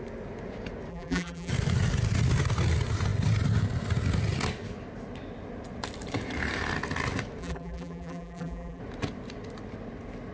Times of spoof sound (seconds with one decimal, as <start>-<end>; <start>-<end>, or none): 0.9-1.5; 7.4-8.8